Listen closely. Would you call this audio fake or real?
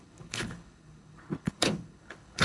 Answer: fake